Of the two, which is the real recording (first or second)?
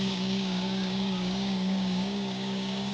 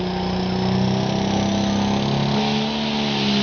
second